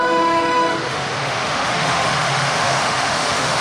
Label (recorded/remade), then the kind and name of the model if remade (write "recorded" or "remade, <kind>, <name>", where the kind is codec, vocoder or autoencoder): remade, autoencoder, DAC-VAE